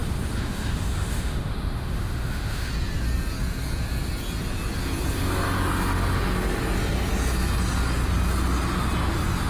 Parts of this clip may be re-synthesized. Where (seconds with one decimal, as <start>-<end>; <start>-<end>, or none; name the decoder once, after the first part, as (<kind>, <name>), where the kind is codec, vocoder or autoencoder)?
0.0-2.7 (autoencoder, DAC-VAE)